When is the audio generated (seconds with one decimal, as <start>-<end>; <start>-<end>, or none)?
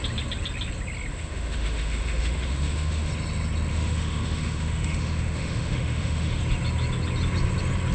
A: 1.1-3.1; 3.7-6.4